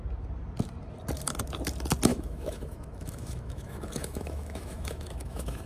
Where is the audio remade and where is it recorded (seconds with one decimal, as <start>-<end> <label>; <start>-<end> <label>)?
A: 0.0-2.1 recorded; 2.1-5.7 remade